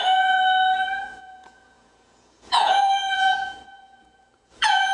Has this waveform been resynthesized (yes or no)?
yes